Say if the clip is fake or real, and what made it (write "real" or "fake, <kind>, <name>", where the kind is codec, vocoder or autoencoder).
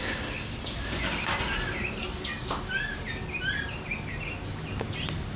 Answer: real